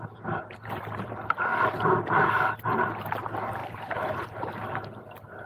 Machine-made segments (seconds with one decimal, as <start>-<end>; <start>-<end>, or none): 0.0-1.5; 2.1-5.5